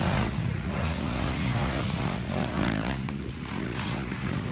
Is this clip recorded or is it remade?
remade